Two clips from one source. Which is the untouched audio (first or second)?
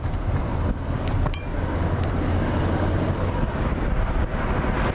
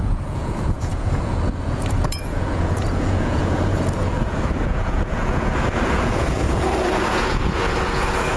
first